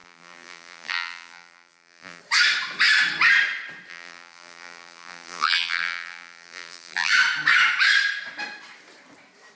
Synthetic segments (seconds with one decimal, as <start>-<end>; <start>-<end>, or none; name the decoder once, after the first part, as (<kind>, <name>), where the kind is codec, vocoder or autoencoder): 0.0-2.2 (vocoder, BigVGAN v2); 3.9-7.1